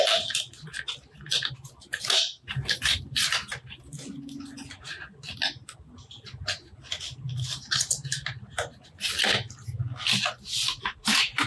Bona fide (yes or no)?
yes